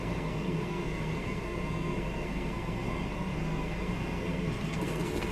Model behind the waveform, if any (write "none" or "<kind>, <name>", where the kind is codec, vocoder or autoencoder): codec, SNAC